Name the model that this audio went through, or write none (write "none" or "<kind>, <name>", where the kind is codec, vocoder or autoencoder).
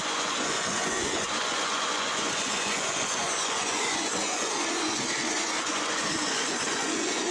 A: vocoder, Vocos